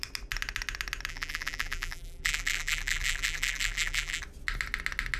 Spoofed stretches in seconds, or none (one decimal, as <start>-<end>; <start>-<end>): 1.1-4.2